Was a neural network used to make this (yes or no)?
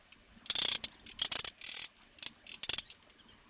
no